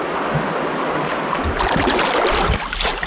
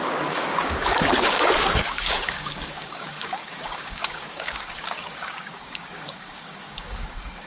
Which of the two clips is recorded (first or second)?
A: first